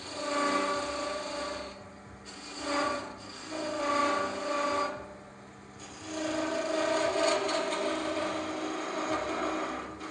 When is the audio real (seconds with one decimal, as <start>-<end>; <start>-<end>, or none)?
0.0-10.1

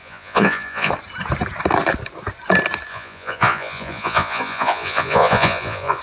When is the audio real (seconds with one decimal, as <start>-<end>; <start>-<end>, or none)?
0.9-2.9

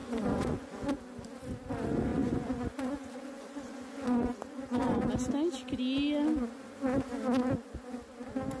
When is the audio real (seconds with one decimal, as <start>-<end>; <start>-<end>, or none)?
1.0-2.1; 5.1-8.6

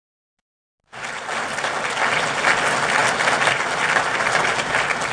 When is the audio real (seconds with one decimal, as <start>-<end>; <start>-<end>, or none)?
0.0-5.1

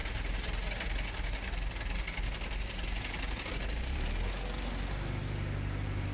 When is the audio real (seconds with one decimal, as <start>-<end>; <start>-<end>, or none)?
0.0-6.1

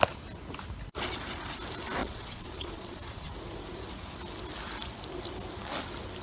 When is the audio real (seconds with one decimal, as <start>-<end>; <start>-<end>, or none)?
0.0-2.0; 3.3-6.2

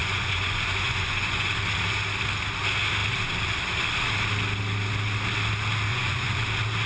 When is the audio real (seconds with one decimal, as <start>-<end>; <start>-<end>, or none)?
1.5-5.9; 6.4-6.9

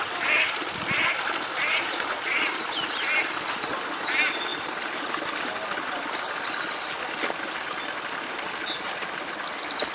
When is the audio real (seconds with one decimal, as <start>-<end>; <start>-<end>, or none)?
0.0-1.7; 2.4-9.9